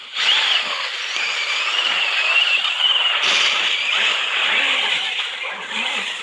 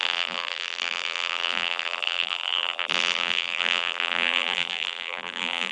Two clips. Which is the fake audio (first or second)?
second